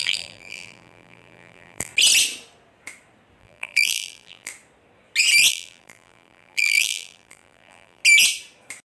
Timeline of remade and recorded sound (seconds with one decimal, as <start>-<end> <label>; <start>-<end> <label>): 0.0-1.9 remade; 1.9-3.4 recorded; 3.4-4.5 remade; 4.5-5.5 recorded; 5.5-8.0 remade; 8.0-8.9 recorded